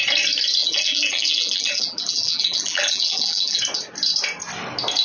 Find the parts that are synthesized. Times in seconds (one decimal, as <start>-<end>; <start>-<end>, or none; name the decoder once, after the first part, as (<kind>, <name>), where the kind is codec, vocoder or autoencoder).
0.6-3.6 (vocoder, BigVGAN v2)